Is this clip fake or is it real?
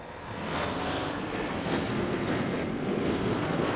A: fake